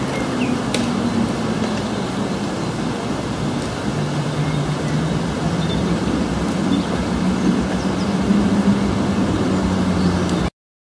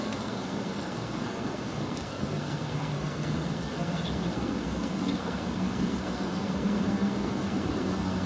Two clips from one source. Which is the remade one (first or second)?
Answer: second